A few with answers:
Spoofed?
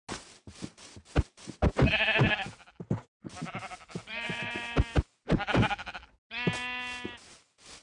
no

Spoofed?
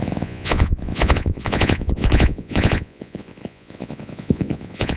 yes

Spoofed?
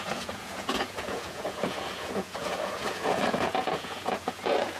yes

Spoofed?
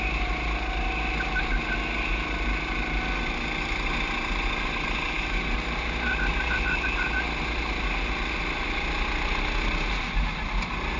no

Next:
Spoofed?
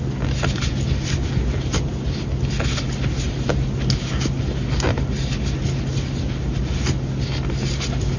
no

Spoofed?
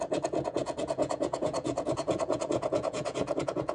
yes